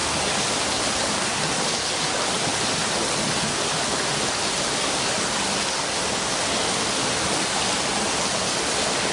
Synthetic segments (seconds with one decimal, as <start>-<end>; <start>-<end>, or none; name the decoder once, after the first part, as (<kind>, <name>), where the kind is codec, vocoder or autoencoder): none